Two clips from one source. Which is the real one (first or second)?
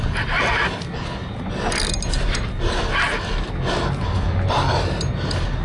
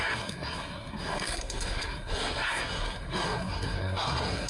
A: first